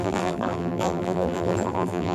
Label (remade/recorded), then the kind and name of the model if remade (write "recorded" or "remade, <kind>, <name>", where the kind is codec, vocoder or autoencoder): remade, vocoder, BigVGAN v2